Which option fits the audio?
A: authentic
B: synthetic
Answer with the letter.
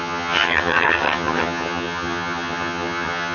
B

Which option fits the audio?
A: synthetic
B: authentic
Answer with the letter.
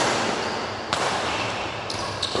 B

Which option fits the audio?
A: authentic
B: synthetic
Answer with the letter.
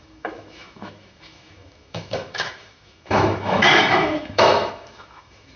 B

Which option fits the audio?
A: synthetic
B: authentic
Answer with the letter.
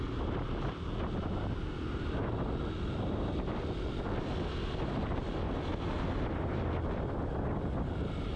B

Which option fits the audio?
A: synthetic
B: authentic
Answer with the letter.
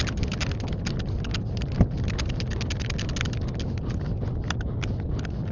B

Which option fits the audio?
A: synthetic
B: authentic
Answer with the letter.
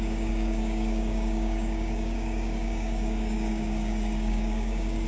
A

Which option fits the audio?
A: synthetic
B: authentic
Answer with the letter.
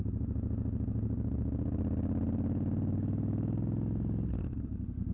B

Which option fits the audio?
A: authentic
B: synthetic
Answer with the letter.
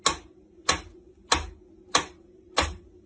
A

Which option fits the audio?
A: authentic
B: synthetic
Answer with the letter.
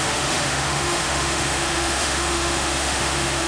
B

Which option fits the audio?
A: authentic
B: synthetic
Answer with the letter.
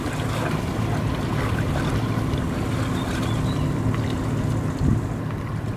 A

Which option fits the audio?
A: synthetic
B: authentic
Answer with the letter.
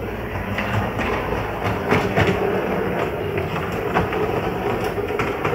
A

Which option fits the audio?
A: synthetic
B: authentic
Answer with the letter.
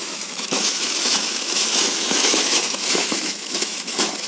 A